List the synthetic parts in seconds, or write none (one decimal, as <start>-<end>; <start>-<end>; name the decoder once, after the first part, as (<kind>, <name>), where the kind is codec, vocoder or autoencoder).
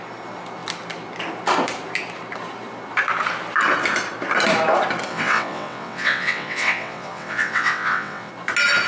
5.1-8.3 (vocoder, WaveNeXt)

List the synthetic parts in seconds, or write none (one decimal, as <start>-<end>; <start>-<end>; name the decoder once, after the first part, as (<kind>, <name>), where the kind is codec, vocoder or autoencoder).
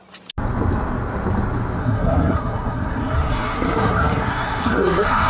1.8-5.3 (codec, SNAC)